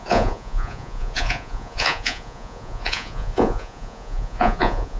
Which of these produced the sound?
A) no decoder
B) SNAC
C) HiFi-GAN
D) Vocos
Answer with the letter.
D